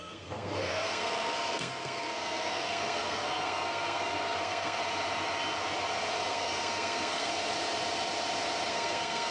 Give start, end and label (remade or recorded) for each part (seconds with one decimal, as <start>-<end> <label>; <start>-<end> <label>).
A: 0.0-4.8 remade; 4.8-6.3 recorded; 6.3-7.3 remade; 7.3-8.7 recorded; 8.7-9.3 remade